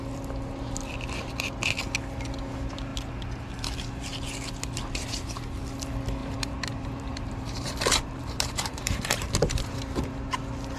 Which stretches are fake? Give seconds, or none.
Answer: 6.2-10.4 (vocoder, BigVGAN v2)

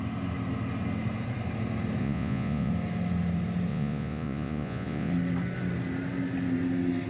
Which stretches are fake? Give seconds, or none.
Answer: 2.0-2.7 (vocoder, Vocos); 3.7-5.1